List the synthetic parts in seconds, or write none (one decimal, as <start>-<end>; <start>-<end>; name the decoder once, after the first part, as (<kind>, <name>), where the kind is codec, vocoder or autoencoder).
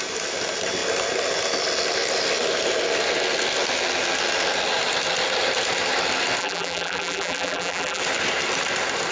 6.4-8.0 (vocoder, BigVGAN v2)